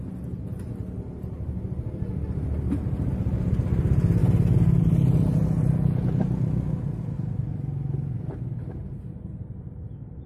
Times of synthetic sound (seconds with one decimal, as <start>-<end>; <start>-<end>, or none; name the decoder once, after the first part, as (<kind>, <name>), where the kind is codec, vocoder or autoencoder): none